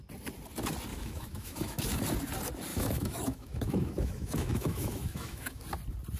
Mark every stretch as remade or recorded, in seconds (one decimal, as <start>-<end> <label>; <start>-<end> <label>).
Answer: 0.0-0.9 recorded; 0.9-2.0 remade; 2.0-2.7 recorded; 2.7-5.6 remade; 5.6-6.2 recorded